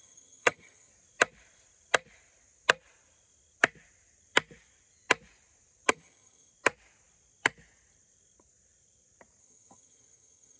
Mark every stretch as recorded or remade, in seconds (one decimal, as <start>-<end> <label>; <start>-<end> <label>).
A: 0.0-0.9 remade; 0.9-5.9 recorded; 5.9-6.5 remade; 6.5-9.4 recorded; 9.4-10.6 remade